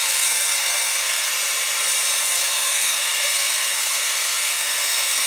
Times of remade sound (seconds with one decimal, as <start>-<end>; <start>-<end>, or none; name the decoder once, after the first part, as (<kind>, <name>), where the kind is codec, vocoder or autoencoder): 0.0-1.3 (codec, SNAC); 2.2-5.3